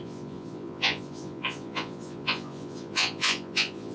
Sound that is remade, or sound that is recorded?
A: remade